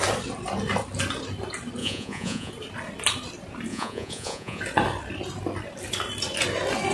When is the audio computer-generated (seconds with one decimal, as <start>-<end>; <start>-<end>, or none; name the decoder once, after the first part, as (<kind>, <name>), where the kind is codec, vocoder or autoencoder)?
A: 1.8-2.5 (vocoder, Vocos); 3.7-4.6